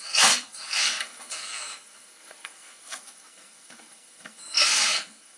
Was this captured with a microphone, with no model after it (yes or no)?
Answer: no